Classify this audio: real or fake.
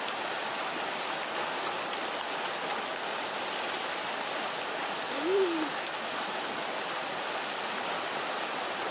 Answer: real